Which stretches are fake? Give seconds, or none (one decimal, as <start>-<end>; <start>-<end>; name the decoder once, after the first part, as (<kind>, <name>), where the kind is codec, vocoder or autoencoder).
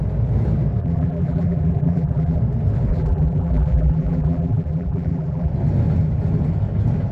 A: 0.8-2.4 (vocoder, BigVGAN v2); 2.9-5.5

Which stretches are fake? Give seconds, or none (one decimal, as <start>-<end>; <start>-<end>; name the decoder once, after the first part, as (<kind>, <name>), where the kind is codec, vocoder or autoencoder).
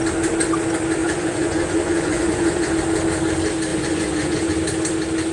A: 1.0-2.7 (vocoder, Vocos); 3.7-4.5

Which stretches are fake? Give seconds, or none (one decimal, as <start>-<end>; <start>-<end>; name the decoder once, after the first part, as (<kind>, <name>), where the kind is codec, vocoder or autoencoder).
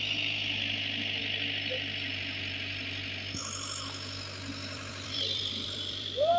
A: 4.6-6.4 (vocoder, BigVGAN v2)